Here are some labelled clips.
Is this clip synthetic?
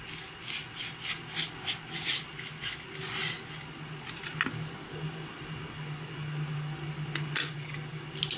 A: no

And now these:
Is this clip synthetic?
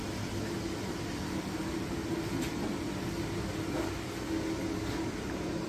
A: no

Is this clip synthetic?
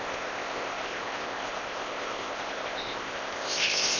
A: yes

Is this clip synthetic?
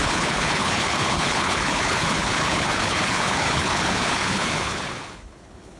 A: yes